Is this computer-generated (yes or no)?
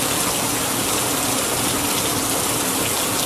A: no